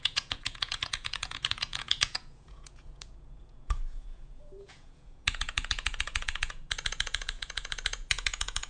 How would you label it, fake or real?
fake